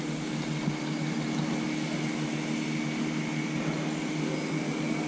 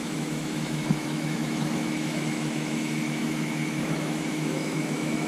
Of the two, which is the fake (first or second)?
second